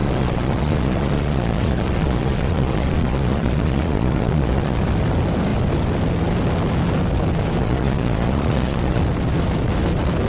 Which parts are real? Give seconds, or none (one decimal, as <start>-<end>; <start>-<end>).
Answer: 4.8-7.6; 9.0-10.3